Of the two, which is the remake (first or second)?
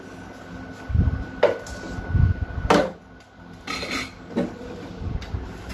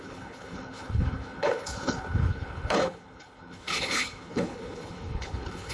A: second